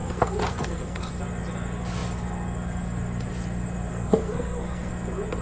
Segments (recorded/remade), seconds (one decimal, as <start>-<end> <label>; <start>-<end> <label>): 0.0-1.1 remade; 1.1-3.9 recorded; 3.9-4.9 remade; 4.9-5.4 recorded